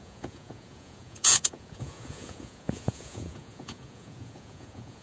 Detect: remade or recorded remade